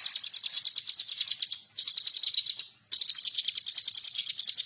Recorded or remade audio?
recorded